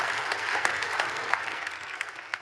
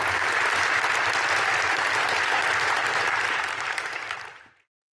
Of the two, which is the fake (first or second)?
first